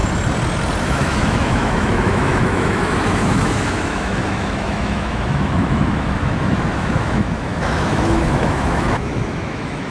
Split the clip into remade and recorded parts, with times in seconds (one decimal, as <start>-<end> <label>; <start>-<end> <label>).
0.0-0.8 recorded; 0.8-9.9 remade